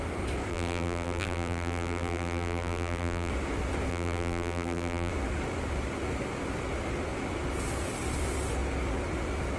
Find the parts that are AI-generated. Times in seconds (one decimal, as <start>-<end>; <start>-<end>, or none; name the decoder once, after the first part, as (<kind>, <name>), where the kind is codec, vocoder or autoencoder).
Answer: 0.5-3.3 (vocoder, BigVGAN v2); 3.9-5.1